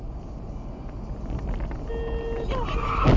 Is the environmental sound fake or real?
real